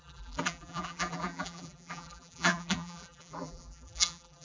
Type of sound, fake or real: fake